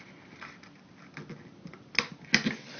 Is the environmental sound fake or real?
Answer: real